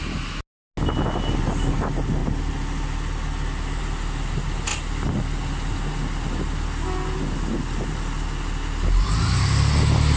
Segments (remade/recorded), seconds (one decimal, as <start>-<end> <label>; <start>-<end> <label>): 0.0-10.2 recorded